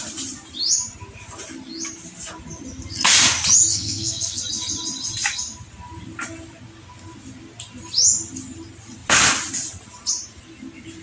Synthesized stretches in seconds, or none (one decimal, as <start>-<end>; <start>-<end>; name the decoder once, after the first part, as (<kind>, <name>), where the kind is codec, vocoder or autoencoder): 3.7-4.4 (codec, SNAC)